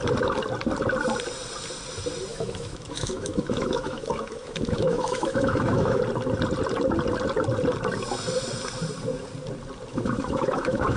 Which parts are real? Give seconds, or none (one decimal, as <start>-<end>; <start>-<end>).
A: 0.0-2.3; 6.0-9.9

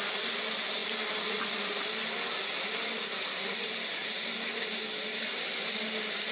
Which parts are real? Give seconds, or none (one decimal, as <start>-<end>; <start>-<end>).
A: 0.0-6.3

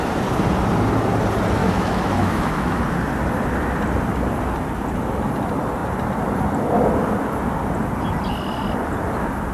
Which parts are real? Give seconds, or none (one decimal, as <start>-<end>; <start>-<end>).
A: 0.0-1.6; 2.8-9.5

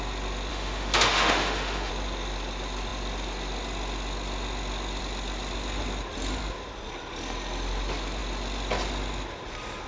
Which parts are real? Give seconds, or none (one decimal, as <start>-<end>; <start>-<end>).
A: 0.0-0.5; 1.9-9.9